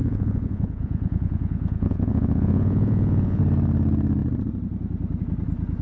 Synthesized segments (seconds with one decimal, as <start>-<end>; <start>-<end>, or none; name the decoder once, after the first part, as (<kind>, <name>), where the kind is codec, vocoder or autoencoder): 0.0-3.4 (vocoder, Vocos)